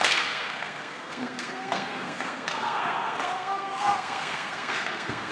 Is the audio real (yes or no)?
no